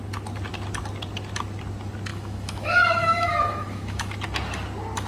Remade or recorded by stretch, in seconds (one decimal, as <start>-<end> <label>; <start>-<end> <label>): 0.0-2.1 recorded; 2.1-4.1 remade; 4.1-5.1 recorded